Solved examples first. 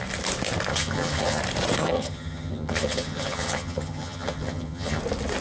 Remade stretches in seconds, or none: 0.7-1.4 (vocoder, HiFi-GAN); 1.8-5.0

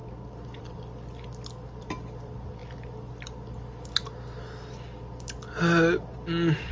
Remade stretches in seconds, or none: none